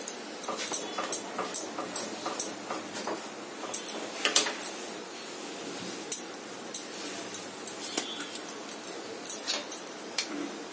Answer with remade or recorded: recorded